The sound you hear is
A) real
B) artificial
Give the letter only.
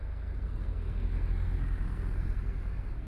B